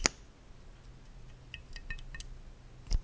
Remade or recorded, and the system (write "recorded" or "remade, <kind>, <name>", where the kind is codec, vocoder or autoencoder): recorded